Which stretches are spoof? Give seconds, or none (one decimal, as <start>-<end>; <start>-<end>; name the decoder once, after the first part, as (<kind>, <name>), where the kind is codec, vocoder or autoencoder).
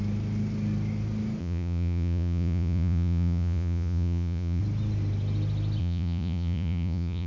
1.4-4.6 (vocoder, Vocos); 5.8-7.3